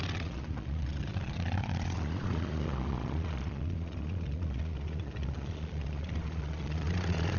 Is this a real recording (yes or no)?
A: no